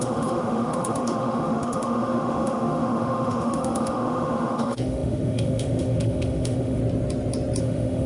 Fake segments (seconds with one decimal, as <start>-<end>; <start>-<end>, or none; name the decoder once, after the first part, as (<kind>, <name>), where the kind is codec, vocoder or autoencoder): 0.0-6.8 (autoencoder, DAC-VAE); 7.6-8.1